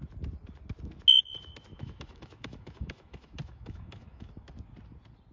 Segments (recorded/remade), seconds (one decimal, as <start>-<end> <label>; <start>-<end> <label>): 0.0-1.7 recorded; 1.7-4.3 remade; 4.3-5.3 recorded

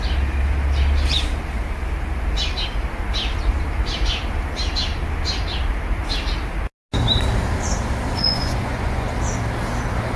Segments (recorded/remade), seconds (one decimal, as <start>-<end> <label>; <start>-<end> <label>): 0.0-8.2 recorded; 8.2-9.1 remade; 9.1-10.2 recorded

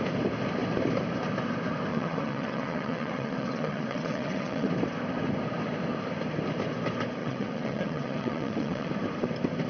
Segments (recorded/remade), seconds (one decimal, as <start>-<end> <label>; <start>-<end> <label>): 0.0-1.9 recorded; 1.9-4.7 remade; 4.7-7.2 recorded; 7.2-8.9 remade; 8.9-9.7 recorded